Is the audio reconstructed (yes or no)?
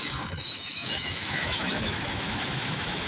yes